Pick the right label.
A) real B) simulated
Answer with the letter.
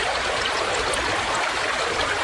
A